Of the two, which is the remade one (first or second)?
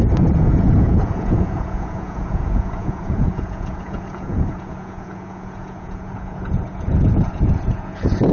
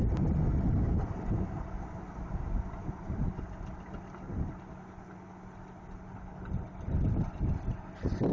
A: first